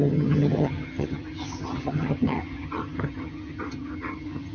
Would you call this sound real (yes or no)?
no